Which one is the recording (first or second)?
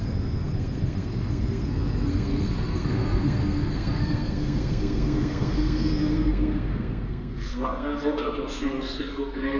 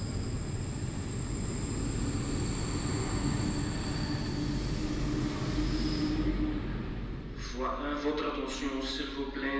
second